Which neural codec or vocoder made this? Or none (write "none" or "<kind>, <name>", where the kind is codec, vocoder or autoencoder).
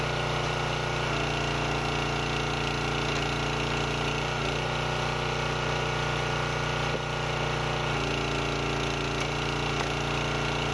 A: none